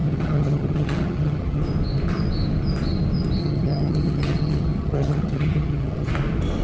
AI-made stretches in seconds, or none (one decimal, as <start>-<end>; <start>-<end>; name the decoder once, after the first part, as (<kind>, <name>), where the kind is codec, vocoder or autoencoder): 0.0-1.6 (vocoder, HiFi-GAN); 3.4-6.1